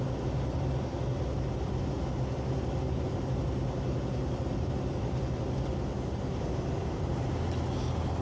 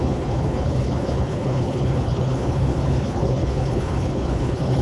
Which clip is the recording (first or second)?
first